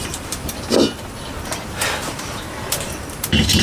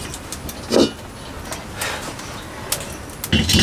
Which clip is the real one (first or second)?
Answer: second